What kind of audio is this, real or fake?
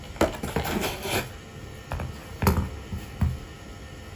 real